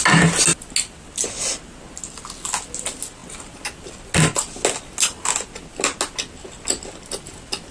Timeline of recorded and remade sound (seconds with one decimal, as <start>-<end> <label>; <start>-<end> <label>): 0.0-7.7 recorded